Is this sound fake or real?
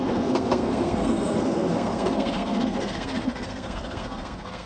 fake